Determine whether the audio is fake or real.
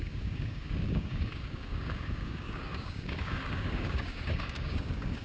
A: fake